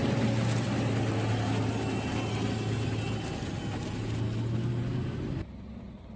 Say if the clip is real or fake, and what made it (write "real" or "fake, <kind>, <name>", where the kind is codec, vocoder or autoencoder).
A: real